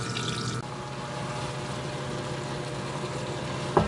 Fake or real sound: real